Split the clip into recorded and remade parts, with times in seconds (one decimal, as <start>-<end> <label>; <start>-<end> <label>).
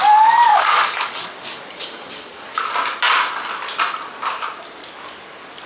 0.0-0.5 recorded; 0.5-2.6 remade; 2.6-5.7 recorded